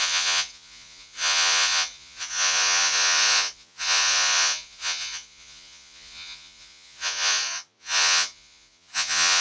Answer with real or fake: fake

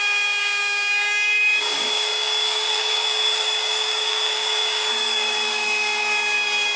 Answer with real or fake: fake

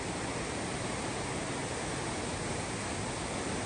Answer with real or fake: real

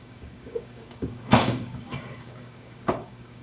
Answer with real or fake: fake